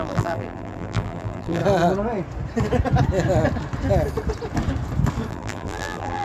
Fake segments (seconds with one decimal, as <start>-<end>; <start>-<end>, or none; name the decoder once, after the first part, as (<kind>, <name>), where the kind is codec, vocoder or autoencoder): 0.0-1.6 (vocoder, BigVGAN v2); 5.3-6.2